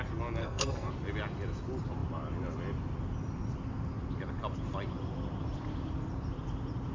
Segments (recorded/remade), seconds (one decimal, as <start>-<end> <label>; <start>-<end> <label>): 0.0-0.4 recorded; 0.4-0.9 remade; 0.9-6.9 recorded